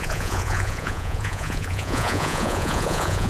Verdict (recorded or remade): remade